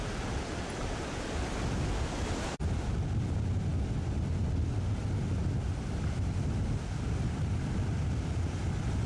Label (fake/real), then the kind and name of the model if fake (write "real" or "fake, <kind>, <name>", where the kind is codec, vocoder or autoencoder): real